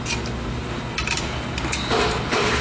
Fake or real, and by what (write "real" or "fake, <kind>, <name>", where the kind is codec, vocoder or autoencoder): real